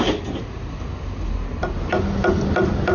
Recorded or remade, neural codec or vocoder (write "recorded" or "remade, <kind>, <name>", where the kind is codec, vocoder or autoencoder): recorded